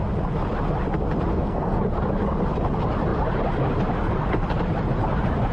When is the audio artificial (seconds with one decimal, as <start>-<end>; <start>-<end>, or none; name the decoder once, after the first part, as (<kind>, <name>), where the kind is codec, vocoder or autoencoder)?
1.3-1.8 (codec, SNAC)